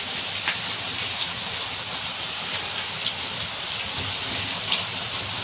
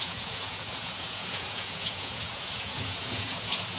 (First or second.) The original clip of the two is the first